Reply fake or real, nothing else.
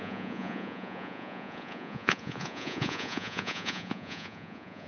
fake